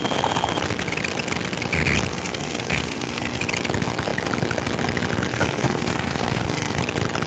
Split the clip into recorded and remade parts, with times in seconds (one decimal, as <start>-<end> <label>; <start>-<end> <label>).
0.0-2.1 recorded; 2.1-3.4 remade; 3.4-5.3 recorded; 5.3-6.8 remade; 6.8-7.3 recorded